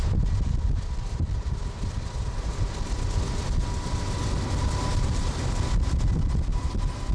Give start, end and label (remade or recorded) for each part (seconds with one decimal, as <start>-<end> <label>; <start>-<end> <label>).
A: 0.0-4.9 recorded; 4.9-6.1 remade; 6.1-7.1 recorded

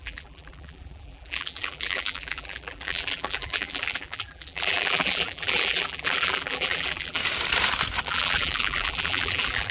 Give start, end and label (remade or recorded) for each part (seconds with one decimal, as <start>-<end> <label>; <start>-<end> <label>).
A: 0.0-7.2 remade; 7.2-8.0 recorded; 8.0-9.7 remade

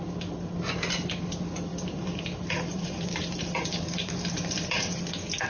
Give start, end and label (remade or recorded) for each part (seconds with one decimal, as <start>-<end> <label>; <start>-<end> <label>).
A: 0.0-1.7 recorded; 1.7-5.0 remade; 5.0-5.5 recorded

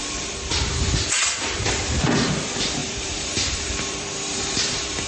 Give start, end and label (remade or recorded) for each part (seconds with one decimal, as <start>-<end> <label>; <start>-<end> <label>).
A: 0.0-1.8 remade; 1.8-2.8 recorded; 2.8-5.1 remade

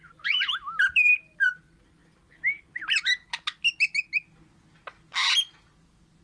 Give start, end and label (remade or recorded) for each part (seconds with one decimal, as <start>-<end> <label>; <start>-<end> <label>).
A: 0.0-2.0 remade; 2.0-5.7 recorded; 5.7-6.2 remade

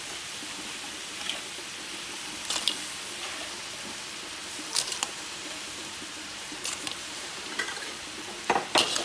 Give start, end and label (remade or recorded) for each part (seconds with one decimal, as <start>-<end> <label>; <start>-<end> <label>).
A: 0.0-4.4 recorded; 4.4-7.9 remade; 7.9-9.0 recorded

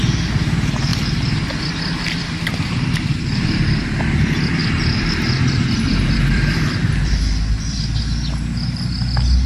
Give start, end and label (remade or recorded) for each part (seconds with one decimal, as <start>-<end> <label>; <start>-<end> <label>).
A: 0.0-0.9 recorded; 0.9-4.0 remade; 4.0-4.6 recorded; 4.6-8.0 remade; 8.0-9.5 recorded

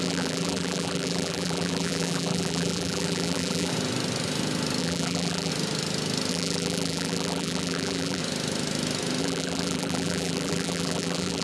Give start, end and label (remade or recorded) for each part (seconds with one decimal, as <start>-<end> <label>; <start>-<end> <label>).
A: 0.0-3.7 remade; 3.7-4.8 recorded; 4.8-5.5 remade; 5.5-6.3 recorded; 6.3-8.2 remade; 8.2-9.2 recorded; 9.2-11.4 remade